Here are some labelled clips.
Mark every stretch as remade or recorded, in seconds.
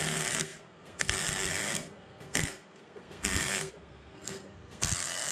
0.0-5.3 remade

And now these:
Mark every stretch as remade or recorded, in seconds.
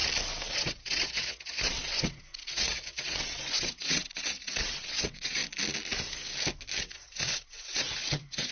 0.0-0.5 recorded; 0.5-5.4 remade; 5.4-6.8 recorded; 6.8-8.5 remade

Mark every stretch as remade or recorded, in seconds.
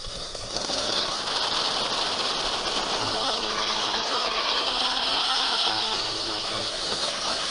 0.0-1.2 remade; 1.2-3.0 recorded; 3.0-7.5 remade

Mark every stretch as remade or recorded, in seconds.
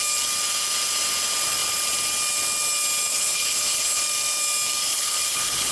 0.0-3.1 recorded; 3.1-4.0 remade; 4.0-4.8 recorded; 4.8-5.7 remade